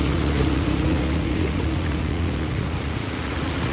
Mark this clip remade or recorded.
remade